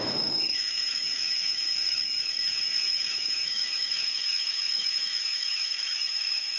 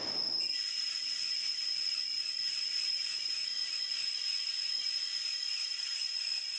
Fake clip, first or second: first